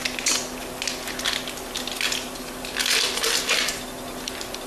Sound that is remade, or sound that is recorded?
recorded